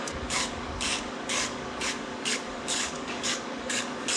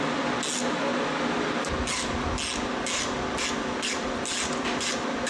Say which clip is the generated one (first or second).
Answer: first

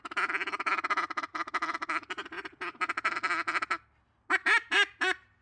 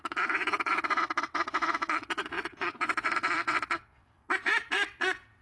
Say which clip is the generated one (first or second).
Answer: second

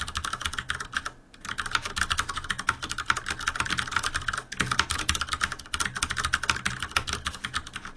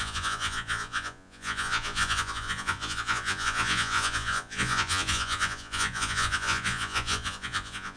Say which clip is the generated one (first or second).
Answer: second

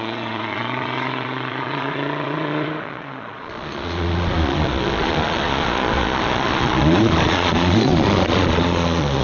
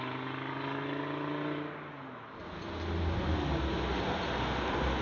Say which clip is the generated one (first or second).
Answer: first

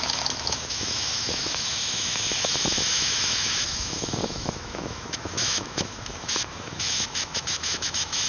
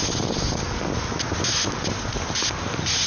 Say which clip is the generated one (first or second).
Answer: first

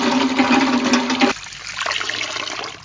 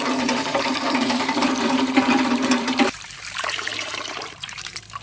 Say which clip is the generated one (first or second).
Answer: second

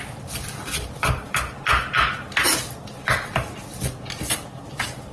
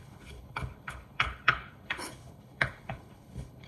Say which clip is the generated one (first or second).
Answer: second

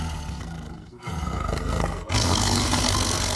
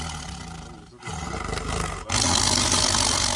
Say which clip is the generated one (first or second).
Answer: first